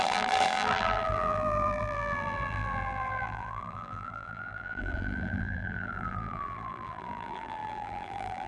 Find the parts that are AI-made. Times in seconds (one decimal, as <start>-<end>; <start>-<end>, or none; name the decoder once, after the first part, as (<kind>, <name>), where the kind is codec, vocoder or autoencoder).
0.0-8.5 (vocoder, BigVGAN v2)

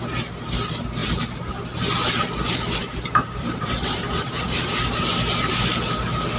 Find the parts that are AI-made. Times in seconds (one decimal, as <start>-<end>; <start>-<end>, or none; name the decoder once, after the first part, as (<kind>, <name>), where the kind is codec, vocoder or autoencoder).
1.0-1.5 (vocoder, BigVGAN v2); 2.8-5.1

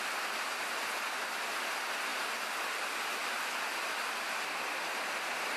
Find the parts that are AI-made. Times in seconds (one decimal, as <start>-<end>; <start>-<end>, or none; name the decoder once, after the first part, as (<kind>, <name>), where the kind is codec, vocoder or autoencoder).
none

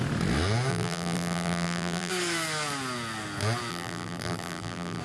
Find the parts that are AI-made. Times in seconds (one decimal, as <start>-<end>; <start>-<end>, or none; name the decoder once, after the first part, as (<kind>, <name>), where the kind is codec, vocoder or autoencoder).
0.7-2.1 (vocoder, BigVGAN v2); 3.7-5.0

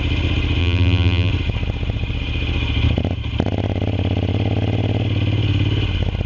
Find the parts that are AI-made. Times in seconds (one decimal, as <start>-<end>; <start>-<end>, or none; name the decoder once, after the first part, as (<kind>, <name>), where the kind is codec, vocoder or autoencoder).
0.6-1.3 (vocoder, BigVGAN v2)